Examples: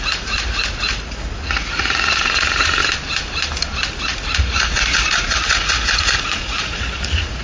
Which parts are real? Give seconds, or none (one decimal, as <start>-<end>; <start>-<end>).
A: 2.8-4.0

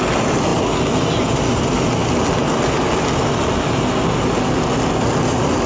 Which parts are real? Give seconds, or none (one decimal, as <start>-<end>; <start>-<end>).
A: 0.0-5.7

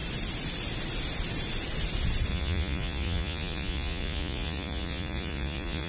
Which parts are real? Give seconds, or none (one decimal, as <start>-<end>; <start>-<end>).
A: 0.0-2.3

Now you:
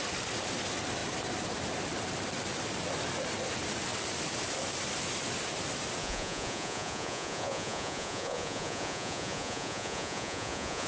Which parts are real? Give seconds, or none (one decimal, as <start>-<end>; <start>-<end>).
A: 0.0-6.0

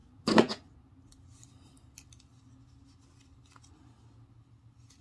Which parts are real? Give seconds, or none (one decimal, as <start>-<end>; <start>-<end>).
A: 0.7-5.0